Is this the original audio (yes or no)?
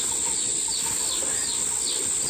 yes